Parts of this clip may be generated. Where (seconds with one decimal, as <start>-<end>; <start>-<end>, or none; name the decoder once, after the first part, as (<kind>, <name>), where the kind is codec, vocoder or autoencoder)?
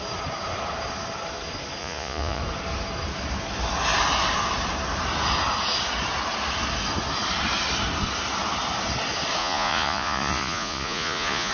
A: 1.8-2.4 (vocoder, Vocos); 9.4-11.5